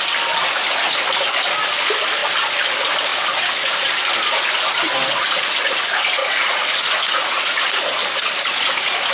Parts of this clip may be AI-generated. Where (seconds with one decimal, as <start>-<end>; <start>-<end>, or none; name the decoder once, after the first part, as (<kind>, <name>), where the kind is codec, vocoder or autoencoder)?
6.2-7.7 (vocoder, Vocos)